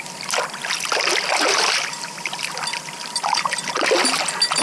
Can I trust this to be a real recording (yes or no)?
yes